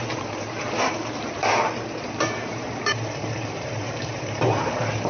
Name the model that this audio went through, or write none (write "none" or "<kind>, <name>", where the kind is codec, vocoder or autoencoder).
vocoder, BigVGAN v2